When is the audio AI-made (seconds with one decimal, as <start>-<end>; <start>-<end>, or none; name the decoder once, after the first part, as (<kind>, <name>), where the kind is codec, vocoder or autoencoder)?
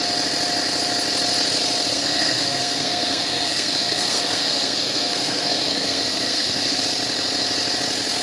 1.9-6.8 (codec, SNAC)